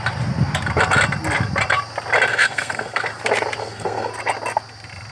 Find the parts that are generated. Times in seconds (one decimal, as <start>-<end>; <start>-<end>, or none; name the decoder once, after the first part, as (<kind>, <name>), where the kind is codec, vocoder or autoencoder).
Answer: 2.3-3.1 (codec, SNAC); 3.6-4.1